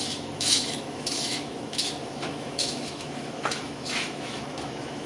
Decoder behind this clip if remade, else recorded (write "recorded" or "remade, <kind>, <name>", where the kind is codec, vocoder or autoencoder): remade, autoencoder, DAC-VAE